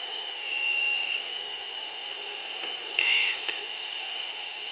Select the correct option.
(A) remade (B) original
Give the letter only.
A